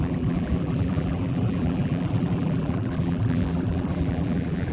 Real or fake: fake